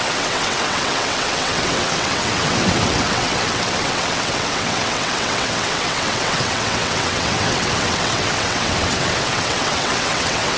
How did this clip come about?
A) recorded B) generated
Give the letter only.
B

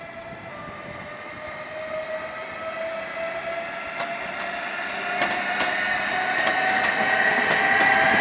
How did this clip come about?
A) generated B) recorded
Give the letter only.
B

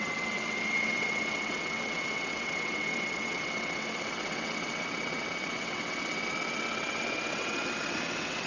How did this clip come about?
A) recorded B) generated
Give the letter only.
B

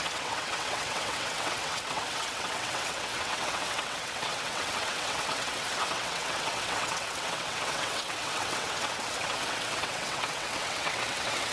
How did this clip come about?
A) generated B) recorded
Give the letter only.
A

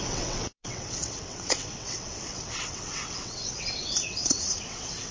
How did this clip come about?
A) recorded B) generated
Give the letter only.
B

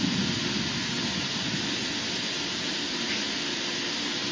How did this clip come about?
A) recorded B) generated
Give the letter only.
A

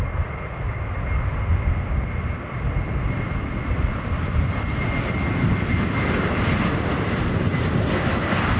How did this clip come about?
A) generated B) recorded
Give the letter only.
B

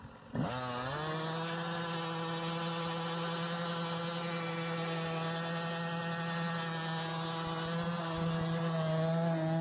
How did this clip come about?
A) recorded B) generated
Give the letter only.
A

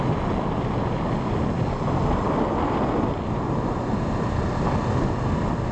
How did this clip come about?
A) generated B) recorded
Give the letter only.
B